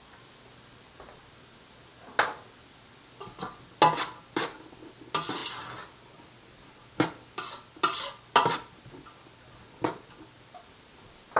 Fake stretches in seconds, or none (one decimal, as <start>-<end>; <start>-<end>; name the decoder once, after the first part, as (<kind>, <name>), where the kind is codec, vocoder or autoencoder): none